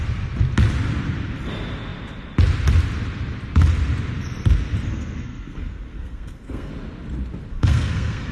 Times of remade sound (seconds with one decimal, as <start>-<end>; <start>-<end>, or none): 4.9-6.7; 7.5-8.3